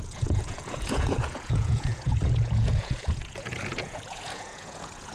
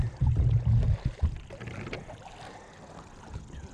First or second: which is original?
second